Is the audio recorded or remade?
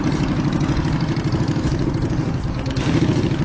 remade